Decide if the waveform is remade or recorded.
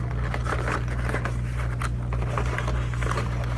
recorded